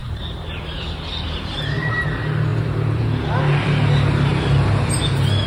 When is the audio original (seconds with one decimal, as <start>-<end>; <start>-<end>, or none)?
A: 0.8-5.5